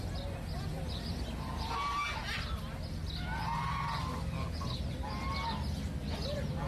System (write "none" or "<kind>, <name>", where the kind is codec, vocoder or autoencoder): none